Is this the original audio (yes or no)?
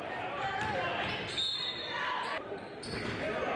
yes